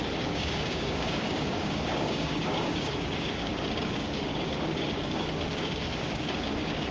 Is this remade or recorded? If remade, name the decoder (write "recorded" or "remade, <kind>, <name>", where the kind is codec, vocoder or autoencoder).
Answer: remade, codec, DAC